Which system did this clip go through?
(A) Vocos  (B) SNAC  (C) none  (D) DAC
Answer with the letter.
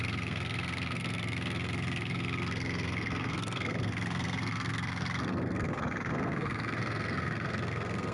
B